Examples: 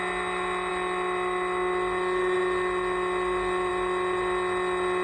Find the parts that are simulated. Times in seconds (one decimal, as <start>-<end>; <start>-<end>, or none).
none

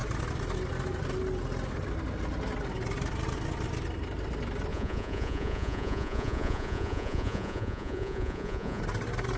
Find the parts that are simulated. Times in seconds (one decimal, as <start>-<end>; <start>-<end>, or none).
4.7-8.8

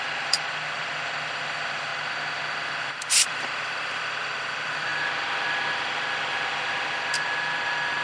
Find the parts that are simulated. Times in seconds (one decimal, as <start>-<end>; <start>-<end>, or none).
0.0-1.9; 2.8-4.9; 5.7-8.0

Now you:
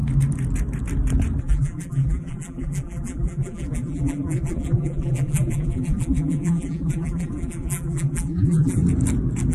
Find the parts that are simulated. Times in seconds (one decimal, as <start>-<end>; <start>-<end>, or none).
1.4-8.8

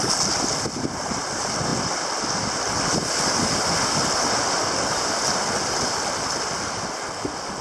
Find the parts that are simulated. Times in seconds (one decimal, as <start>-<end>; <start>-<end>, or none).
none

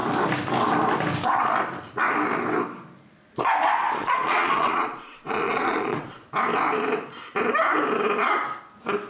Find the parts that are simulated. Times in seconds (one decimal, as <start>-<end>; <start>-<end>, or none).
4.0-6.2

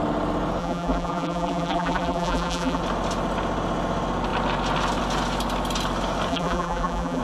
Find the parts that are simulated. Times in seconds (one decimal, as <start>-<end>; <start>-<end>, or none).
0.6-2.8; 6.3-7.2

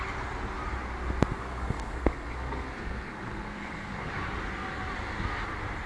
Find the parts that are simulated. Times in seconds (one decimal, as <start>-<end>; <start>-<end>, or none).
1.4-4.1